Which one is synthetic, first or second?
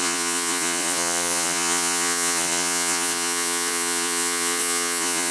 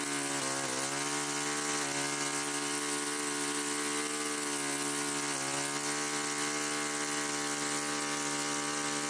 first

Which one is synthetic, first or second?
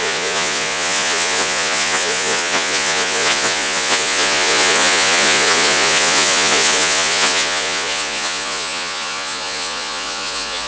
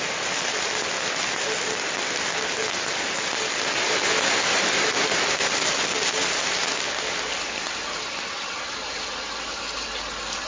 first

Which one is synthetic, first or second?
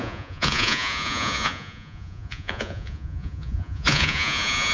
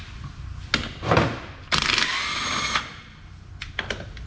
first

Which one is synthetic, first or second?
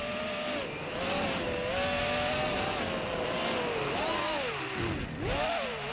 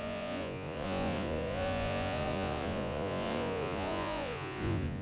second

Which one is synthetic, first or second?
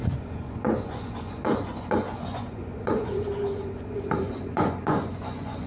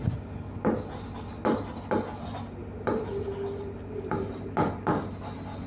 first